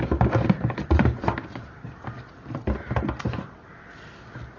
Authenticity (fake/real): real